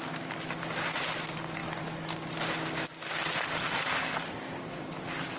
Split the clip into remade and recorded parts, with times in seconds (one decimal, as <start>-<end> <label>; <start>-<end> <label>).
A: 0.0-5.4 recorded